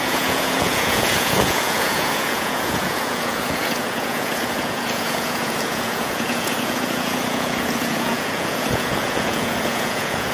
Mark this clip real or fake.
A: fake